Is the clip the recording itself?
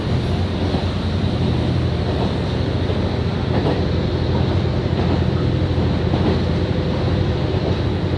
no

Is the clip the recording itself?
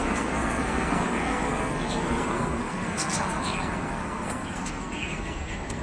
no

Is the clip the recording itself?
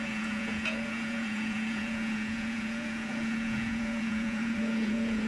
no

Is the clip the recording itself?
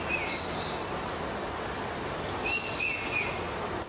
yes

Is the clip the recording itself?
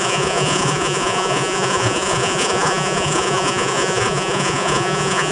no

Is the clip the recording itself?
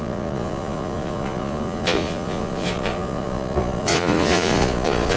no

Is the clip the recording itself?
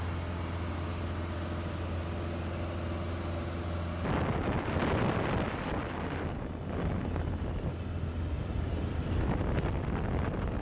yes